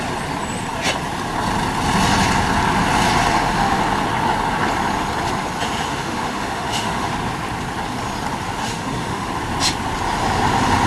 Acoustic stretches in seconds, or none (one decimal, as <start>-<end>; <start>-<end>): 0.0-3.3; 3.8-5.9; 7.1-8.6; 9.3-10.9